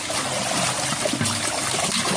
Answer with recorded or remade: recorded